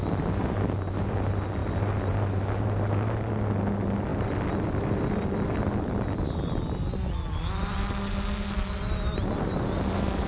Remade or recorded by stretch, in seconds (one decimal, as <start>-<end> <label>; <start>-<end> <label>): 0.0-10.3 recorded

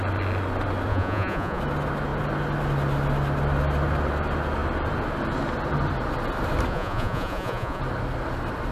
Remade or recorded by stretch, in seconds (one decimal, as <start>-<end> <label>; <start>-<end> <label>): 0.0-0.9 recorded; 0.9-1.6 remade; 1.6-6.7 recorded; 6.7-7.8 remade; 7.8-8.7 recorded

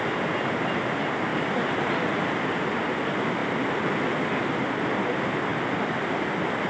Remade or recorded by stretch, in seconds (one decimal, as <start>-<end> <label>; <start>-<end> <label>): 0.0-3.4 recorded; 3.4-4.0 remade; 4.0-6.7 recorded

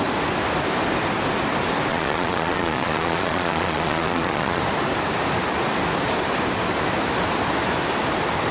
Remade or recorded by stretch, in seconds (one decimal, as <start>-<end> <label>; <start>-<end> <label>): 0.0-1.9 recorded; 1.9-4.6 remade; 4.6-8.5 recorded

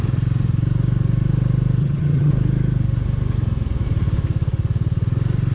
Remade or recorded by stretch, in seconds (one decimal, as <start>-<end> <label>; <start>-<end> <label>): 0.0-1.8 recorded; 1.8-2.3 remade; 2.3-5.5 recorded

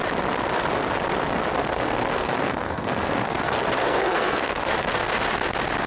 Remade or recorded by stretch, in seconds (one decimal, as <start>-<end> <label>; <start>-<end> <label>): 0.0-1.6 recorded; 1.6-5.1 remade; 5.1-5.9 recorded